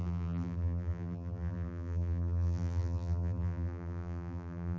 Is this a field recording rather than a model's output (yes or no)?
no